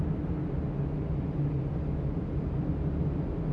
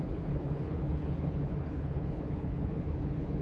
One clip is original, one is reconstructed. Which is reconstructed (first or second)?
second